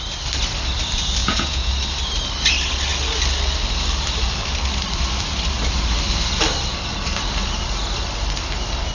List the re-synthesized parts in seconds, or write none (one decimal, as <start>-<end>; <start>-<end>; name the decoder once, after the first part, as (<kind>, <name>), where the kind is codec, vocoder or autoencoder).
1.2-1.7 (vocoder, Vocos)